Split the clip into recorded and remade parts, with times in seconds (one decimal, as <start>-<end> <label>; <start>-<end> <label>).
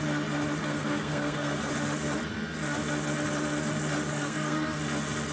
0.0-0.6 recorded; 0.6-1.7 remade; 1.7-4.1 recorded; 4.1-4.8 remade; 4.8-5.3 recorded